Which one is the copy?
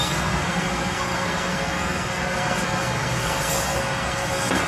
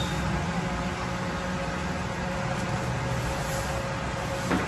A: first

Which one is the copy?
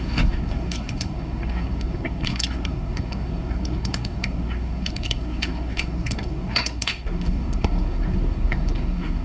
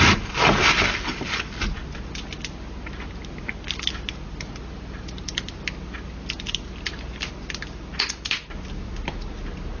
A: first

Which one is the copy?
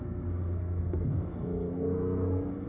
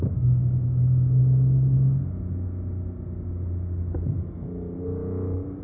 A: first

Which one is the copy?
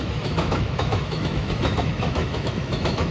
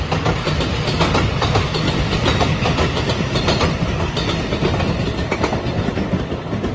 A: first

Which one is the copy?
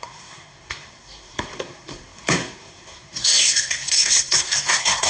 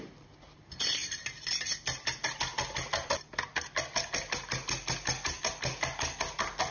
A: first